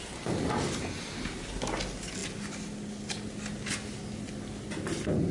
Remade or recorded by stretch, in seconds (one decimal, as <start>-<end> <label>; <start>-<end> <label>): 0.0-5.3 recorded